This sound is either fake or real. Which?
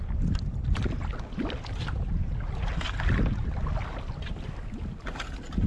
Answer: real